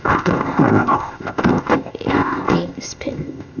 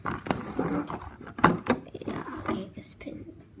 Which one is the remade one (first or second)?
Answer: first